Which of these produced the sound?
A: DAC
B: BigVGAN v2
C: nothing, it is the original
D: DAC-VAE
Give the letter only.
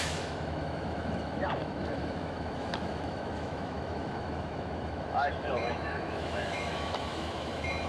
D